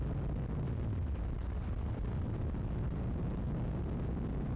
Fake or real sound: real